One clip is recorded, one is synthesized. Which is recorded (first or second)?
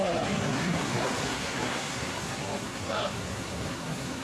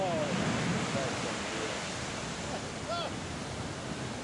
second